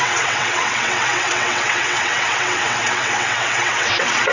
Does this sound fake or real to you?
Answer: fake